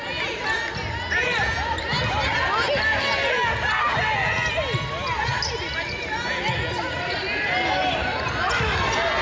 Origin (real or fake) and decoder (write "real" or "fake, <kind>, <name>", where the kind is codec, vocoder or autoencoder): real